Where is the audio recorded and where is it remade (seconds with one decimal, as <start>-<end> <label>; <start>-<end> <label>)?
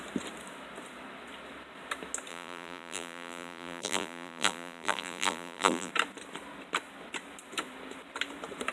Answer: 0.0-2.3 recorded; 2.3-5.9 remade; 5.9-8.7 recorded